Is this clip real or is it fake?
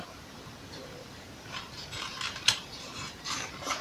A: fake